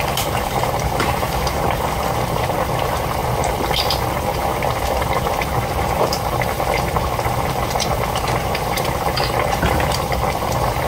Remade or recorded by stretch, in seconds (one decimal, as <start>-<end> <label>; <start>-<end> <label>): 0.0-3.2 remade; 3.2-4.3 recorded; 4.3-10.9 remade